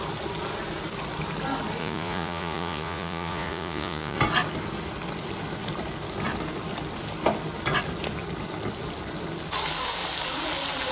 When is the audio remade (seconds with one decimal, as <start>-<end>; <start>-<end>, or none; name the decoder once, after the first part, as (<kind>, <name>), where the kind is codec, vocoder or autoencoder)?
1.8-4.2 (vocoder, Vocos)